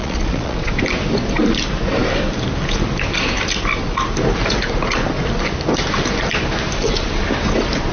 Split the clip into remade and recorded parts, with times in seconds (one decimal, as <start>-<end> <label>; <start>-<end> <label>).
0.0-0.7 remade; 0.7-7.9 recorded